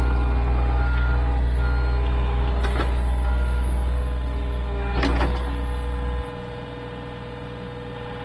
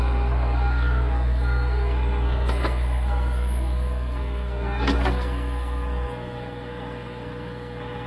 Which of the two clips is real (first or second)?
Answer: first